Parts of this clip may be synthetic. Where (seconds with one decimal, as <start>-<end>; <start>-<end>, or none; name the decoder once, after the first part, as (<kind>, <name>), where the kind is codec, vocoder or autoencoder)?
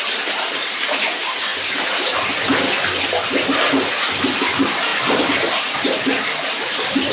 4.9-5.5 (vocoder, BigVGAN v2)